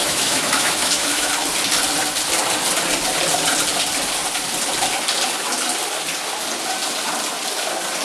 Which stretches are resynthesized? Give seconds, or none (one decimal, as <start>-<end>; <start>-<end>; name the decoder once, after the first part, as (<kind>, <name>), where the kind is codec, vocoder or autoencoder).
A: 0.0-1.3 (autoencoder, DAC-VAE)